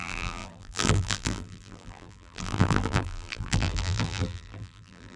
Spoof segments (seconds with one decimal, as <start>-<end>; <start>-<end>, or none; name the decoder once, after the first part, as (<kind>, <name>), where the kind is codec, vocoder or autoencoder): 0.0-5.2 (vocoder, BigVGAN v2)